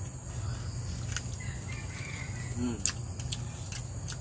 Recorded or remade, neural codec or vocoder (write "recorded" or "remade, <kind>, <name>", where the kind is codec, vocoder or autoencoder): recorded